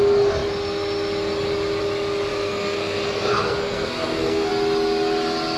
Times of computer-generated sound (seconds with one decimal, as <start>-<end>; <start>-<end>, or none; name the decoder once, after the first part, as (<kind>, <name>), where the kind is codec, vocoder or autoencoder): 2.3-4.5 (codec, SNAC)